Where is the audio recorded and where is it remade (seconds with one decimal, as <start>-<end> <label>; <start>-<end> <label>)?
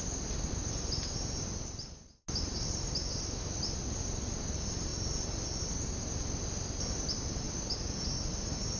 0.0-8.8 recorded